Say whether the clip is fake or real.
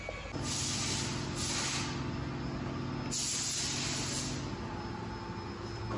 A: real